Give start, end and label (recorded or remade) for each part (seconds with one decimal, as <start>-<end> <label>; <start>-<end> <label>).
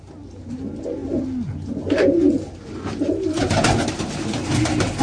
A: 0.0-5.0 recorded